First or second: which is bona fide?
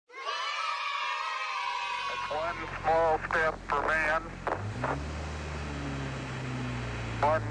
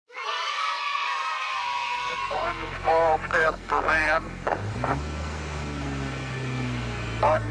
first